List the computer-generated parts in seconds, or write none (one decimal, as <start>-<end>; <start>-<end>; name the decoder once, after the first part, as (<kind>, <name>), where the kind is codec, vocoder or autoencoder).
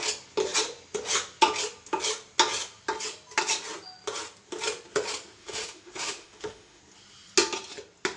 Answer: 5.4-6.8 (autoencoder, DAC-VAE)